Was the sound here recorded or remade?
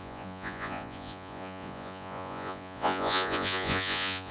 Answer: remade